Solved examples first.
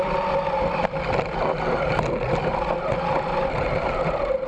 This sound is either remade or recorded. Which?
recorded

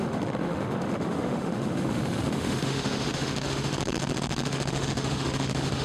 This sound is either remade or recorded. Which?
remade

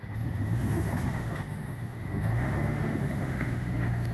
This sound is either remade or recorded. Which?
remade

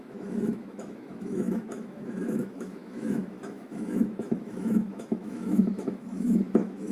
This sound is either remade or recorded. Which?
remade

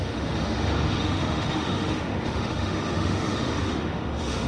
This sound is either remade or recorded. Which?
remade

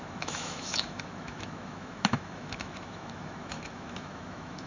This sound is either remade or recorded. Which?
remade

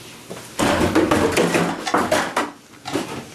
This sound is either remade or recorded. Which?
recorded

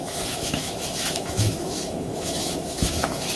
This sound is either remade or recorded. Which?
remade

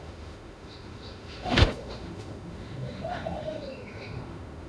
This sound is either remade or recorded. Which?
remade